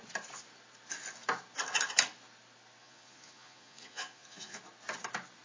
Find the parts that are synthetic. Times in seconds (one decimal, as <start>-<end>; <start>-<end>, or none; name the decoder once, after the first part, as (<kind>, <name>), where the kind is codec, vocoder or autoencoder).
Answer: 2.8-4.6 (vocoder, Vocos)